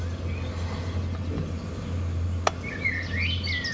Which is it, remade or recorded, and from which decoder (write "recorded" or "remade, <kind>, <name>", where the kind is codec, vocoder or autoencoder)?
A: recorded